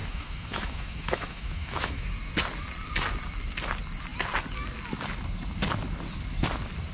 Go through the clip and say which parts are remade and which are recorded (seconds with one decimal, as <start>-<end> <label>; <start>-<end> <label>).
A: 0.0-2.1 remade; 2.1-6.9 recorded